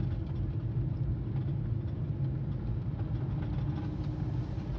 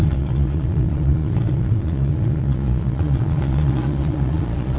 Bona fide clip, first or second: first